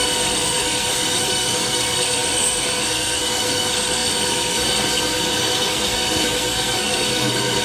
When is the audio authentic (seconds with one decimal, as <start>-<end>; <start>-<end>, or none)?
none